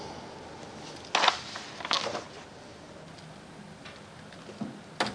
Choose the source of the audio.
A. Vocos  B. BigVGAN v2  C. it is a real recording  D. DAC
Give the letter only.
C